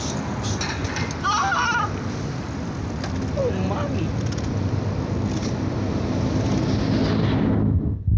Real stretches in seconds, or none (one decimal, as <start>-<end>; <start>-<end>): 0.0-0.8; 3.0-3.4; 4.0-8.2